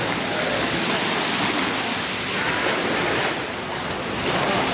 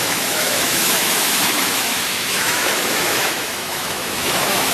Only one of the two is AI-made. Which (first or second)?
second